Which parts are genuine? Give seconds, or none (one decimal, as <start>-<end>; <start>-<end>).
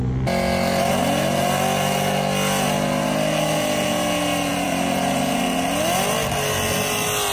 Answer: 0.0-4.5; 5.4-7.3